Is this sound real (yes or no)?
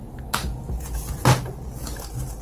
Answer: yes